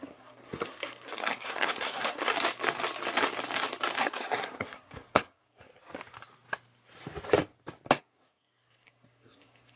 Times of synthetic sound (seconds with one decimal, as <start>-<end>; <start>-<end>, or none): 0.0-2.3; 4.0-5.7; 8.0-9.8